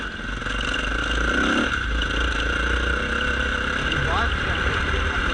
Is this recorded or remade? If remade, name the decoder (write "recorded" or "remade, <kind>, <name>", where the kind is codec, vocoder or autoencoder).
recorded